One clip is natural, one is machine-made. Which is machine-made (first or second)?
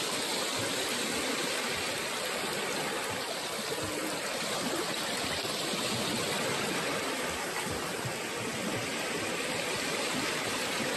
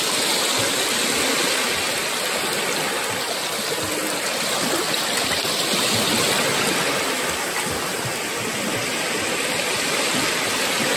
first